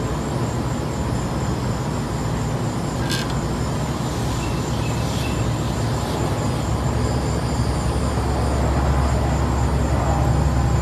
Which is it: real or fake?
real